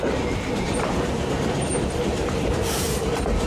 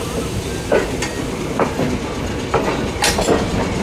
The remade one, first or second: first